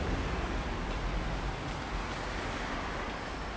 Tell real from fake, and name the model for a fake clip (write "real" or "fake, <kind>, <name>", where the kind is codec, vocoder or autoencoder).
real